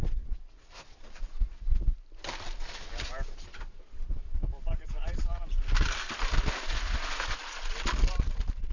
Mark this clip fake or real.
real